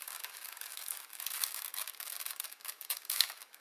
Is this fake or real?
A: fake